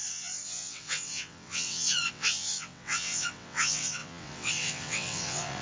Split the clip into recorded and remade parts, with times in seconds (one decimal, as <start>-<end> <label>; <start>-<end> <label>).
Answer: 0.0-5.6 remade